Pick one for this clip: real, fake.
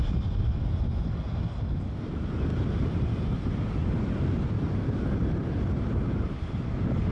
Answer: real